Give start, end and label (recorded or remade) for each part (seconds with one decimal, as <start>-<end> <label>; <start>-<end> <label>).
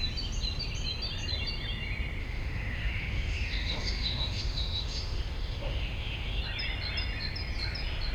0.0-2.2 recorded; 2.2-6.4 remade; 6.4-8.1 recorded